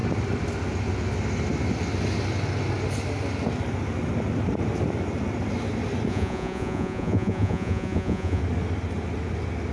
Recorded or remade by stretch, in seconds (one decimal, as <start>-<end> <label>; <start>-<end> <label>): 0.0-6.1 recorded; 6.1-8.4 remade; 8.4-9.7 recorded